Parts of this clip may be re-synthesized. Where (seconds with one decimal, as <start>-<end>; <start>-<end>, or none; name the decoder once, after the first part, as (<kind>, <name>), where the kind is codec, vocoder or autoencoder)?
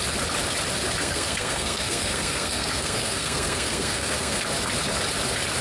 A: 1.0-4.4 (codec, SNAC)